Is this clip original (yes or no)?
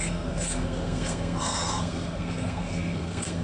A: no